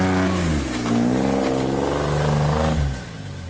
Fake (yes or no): no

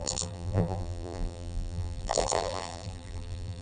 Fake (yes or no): yes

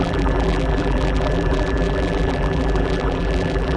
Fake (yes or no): yes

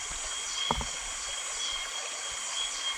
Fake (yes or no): no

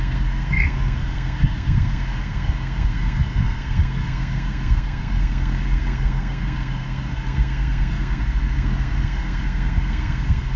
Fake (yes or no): yes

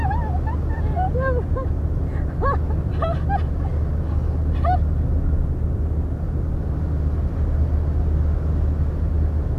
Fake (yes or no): no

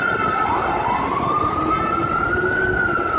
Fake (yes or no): no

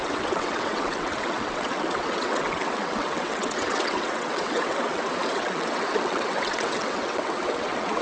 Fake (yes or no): yes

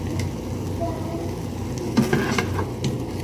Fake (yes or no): no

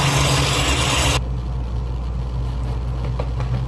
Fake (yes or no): no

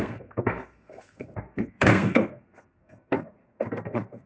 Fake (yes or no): yes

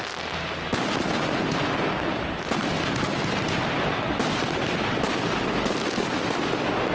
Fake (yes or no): no